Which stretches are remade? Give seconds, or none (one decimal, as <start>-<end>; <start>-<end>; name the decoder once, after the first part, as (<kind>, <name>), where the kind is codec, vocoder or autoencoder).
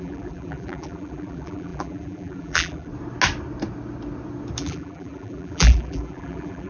0.0-2.9 (vocoder, BigVGAN v2); 4.6-6.7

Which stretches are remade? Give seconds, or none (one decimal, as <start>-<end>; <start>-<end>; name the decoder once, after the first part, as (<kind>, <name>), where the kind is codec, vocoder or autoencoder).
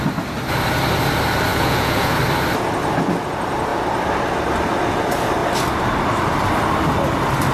1.5-2.2 (vocoder, Vocos)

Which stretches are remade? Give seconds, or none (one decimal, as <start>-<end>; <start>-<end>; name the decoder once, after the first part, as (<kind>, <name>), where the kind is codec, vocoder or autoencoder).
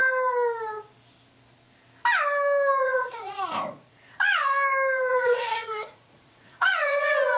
2.8-4.4 (vocoder, Vocos); 5.1-7.4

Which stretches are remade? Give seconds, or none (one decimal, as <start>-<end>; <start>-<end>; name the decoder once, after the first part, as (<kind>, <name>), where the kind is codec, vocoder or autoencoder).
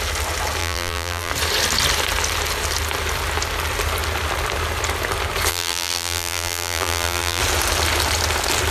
0.6-1.3 (vocoder, BigVGAN v2); 5.5-7.4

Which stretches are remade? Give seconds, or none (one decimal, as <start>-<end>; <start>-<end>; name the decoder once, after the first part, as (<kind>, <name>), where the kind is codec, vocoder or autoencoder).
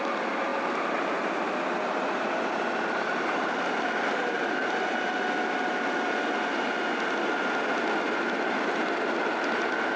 none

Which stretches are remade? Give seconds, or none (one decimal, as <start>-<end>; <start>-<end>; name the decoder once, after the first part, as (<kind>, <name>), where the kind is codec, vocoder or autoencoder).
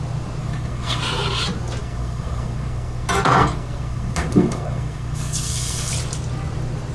0.4-1.0 (codec, SNAC); 1.8-5.9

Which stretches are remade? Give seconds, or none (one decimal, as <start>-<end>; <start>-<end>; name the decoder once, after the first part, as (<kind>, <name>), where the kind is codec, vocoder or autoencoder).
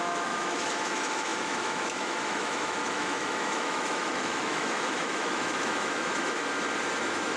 0.0-6.4 (autoencoder, DAC-VAE); 7.0-7.4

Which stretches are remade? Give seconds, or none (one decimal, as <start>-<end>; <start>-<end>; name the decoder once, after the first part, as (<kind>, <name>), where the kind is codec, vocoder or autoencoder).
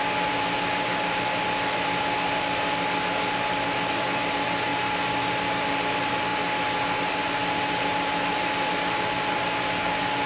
none